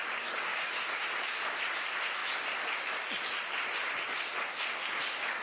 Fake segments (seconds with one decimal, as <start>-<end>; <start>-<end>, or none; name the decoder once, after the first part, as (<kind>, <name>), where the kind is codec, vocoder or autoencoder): 0.5-1.2 (autoencoder, DAC-VAE)